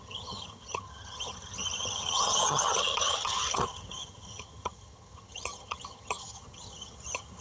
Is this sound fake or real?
fake